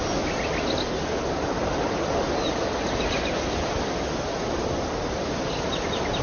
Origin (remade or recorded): recorded